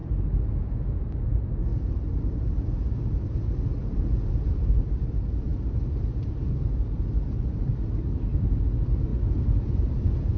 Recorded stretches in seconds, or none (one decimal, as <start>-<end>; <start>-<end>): 0.0-5.5; 8.6-9.1; 10.0-10.4